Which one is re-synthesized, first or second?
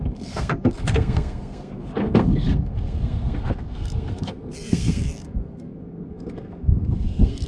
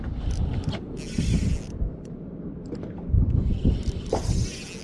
first